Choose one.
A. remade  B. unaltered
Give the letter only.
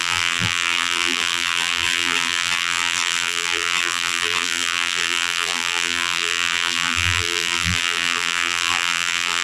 A